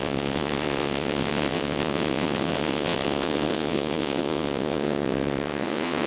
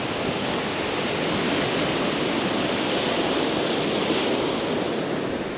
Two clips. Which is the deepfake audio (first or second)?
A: first